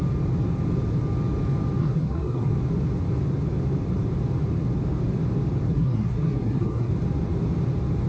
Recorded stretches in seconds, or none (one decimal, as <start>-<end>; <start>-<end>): 0.0-1.8; 2.5-5.7; 6.9-8.1